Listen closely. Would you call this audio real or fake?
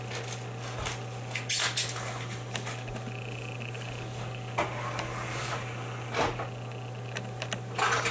real